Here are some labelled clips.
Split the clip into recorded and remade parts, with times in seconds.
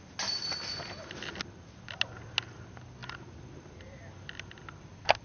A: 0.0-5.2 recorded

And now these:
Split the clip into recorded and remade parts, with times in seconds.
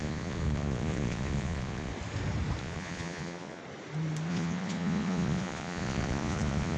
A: 0.0-1.9 remade; 1.9-2.6 recorded; 2.6-3.6 remade; 3.6-4.3 recorded; 4.3-6.8 remade